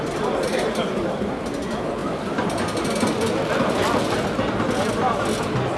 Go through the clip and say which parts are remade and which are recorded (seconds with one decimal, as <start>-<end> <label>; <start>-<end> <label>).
0.0-0.5 recorded; 0.5-1.3 remade; 1.3-5.8 recorded